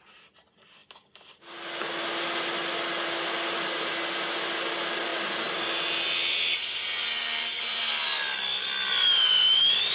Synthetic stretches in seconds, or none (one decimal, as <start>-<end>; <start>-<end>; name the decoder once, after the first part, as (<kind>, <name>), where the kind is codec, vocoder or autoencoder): none